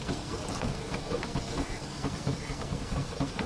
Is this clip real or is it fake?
fake